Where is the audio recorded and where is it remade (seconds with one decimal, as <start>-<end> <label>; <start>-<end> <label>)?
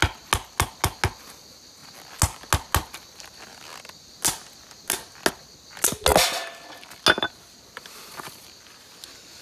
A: 0.0-9.4 recorded